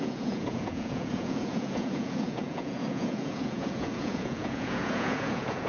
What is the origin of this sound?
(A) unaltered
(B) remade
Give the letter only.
B